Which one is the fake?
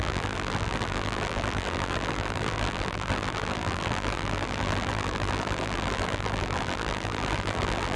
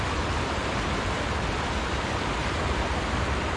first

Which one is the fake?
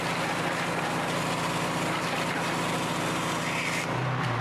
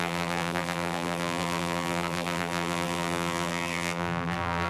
second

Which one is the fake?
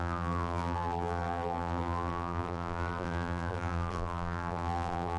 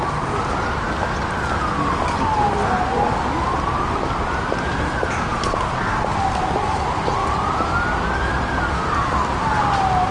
first